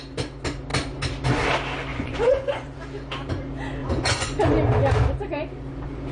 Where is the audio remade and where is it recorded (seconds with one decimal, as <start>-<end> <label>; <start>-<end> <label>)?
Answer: 0.0-1.9 recorded; 1.9-2.8 remade; 2.8-3.8 recorded; 3.8-4.4 remade; 4.4-6.1 recorded